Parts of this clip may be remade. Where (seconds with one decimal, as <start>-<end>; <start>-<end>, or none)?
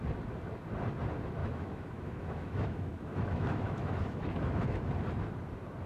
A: 1.4-4.9